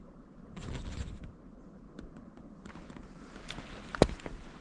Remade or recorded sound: recorded